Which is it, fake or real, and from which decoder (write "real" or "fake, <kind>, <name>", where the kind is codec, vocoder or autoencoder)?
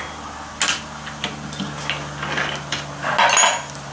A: real